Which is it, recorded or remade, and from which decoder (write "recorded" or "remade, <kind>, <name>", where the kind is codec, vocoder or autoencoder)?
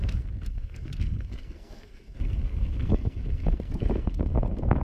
remade, codec, SNAC